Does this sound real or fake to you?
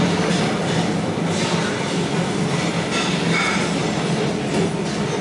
real